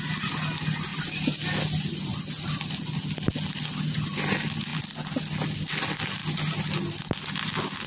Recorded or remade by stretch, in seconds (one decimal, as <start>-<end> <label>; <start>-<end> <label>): 0.0-7.9 recorded